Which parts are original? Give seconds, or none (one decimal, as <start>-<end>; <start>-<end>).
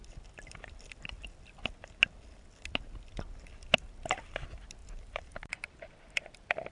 0.0-4.8; 5.6-6.7